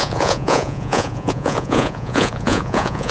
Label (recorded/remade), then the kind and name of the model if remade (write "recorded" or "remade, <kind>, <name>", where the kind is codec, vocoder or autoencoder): remade, vocoder, Vocos